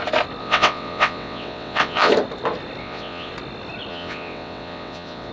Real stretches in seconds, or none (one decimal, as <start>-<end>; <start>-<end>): 0.0-0.4; 2.1-2.8; 3.3-3.9